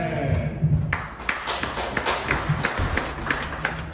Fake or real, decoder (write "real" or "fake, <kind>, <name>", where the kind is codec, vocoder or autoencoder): real